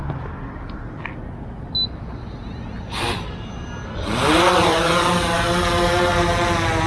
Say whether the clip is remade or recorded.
recorded